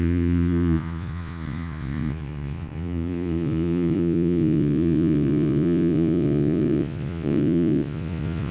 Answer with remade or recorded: remade